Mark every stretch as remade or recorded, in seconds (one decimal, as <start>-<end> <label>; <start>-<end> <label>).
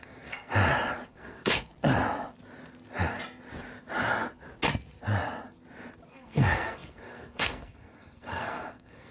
0.0-0.5 remade; 0.5-1.1 recorded; 1.1-1.7 remade; 1.7-6.1 recorded; 6.1-9.1 remade